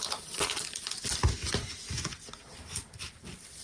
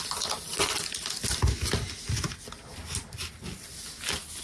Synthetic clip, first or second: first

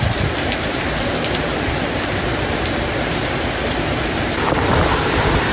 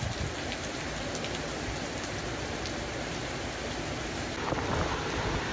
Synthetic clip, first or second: first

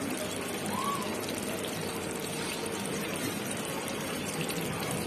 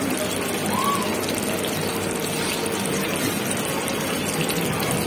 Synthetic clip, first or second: first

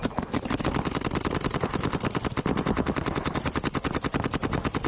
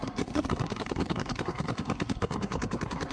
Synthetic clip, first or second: second